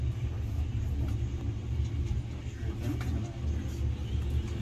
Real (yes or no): yes